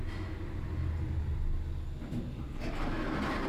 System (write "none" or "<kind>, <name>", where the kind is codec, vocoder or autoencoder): none